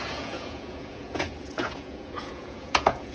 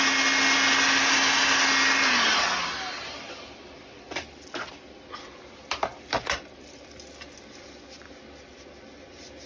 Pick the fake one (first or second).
first